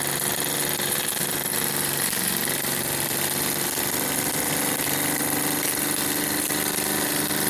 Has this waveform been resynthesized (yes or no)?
no